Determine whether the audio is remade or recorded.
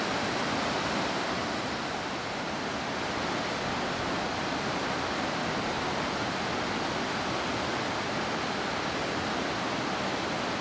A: recorded